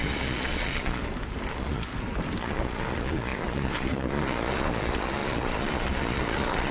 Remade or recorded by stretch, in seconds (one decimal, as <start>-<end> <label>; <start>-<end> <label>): 0.0-1.0 remade; 1.0-1.5 recorded; 1.5-1.9 remade; 1.9-2.4 recorded; 2.4-6.7 remade